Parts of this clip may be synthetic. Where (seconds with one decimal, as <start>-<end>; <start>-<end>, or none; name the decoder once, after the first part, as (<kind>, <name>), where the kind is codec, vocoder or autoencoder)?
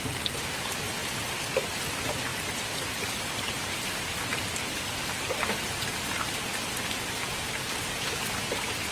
2.3-7.2 (vocoder, BigVGAN v2)